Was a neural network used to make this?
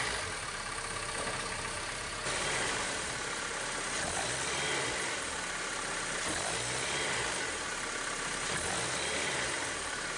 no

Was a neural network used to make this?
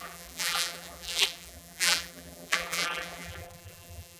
yes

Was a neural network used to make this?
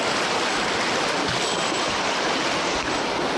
no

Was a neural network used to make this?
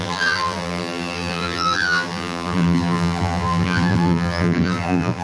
yes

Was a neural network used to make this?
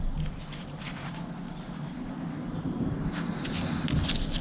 no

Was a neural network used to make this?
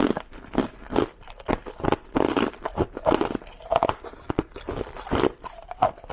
yes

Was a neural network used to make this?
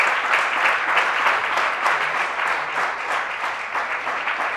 no